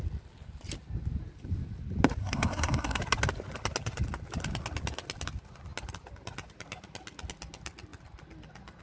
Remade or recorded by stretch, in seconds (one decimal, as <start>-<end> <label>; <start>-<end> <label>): 0.0-2.2 recorded; 2.2-3.0 remade; 3.0-8.8 recorded